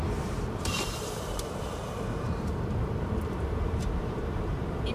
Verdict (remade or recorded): remade